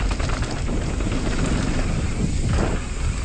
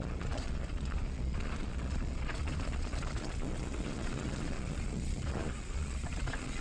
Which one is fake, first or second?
second